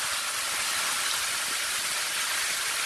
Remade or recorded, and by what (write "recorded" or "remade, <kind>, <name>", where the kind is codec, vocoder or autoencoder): recorded